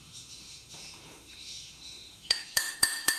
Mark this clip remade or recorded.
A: remade